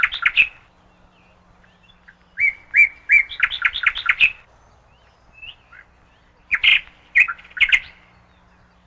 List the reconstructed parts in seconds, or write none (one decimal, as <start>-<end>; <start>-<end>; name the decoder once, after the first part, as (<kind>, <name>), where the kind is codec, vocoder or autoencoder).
none